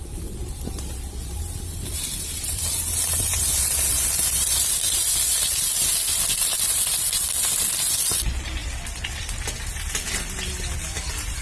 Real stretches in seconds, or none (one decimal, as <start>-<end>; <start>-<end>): 8.6-10.6